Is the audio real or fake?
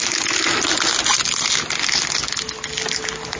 real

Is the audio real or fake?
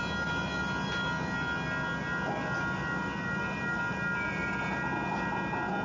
real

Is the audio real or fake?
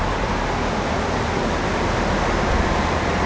real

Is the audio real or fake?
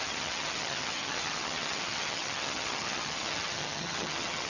fake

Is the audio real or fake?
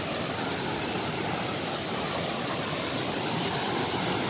real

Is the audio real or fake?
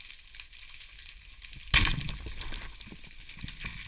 real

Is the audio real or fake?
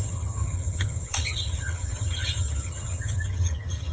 fake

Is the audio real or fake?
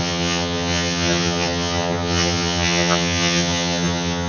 fake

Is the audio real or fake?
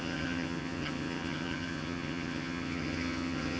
fake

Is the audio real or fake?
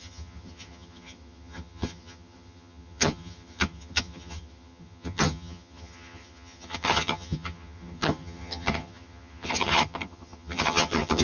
fake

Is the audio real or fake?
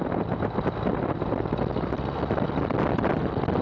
real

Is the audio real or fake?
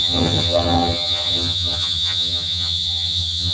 fake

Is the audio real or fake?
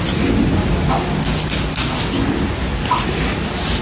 real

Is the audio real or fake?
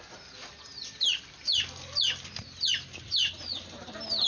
real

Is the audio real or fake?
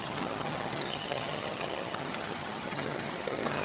fake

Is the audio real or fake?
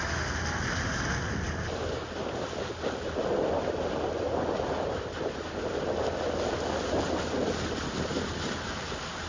real